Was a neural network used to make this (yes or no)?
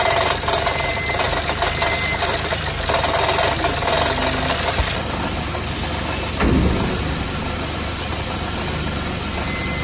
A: no